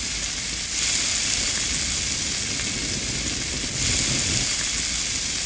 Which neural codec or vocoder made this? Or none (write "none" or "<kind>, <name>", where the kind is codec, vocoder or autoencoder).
none